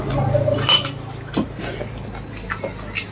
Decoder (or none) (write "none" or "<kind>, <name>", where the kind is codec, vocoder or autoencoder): none